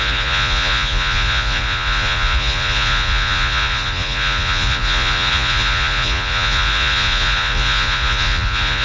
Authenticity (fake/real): fake